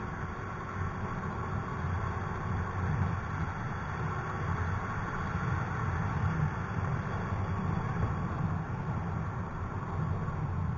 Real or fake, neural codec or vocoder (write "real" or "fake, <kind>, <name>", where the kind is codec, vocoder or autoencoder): real